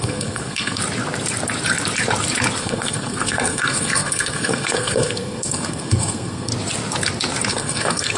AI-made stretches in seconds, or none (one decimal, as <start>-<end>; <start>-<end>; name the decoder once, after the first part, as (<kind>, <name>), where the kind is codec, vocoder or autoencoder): 0.0-0.8 (codec, SNAC); 2.6-6.5; 7.5-8.2